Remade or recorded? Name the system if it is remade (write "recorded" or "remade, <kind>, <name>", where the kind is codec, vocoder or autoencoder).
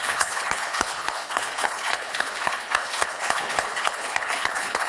remade, codec, HILCodec